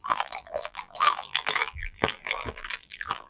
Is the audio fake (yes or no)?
yes